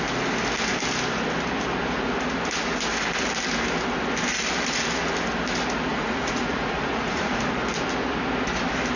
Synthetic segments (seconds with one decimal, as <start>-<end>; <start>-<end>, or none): 5.9-7.4